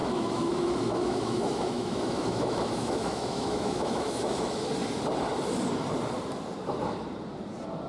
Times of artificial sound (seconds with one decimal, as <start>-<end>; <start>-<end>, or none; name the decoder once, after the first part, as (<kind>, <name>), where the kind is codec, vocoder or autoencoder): 0.0-4.7 (autoencoder, DAC-VAE)

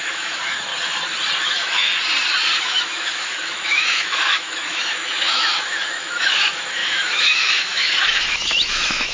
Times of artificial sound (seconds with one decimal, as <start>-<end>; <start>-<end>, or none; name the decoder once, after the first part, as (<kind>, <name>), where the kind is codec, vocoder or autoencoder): 0.0-0.7 (autoencoder, DAC-VAE); 1.4-1.9; 2.6-9.1

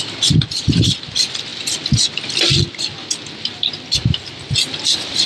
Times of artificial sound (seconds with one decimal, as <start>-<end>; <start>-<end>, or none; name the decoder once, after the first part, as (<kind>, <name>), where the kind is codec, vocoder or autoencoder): none

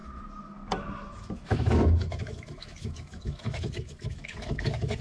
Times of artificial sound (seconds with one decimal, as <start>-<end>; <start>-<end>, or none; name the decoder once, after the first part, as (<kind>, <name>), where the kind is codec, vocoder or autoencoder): 1.1-5.0 (autoencoder, DAC-VAE)

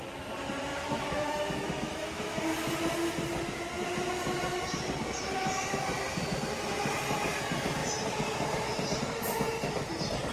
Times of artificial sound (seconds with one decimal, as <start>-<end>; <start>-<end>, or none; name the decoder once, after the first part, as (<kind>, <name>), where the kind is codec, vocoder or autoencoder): 0.7-2.4 (autoencoder, DAC-VAE)